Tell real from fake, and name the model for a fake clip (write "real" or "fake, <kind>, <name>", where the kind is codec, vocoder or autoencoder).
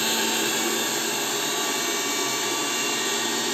real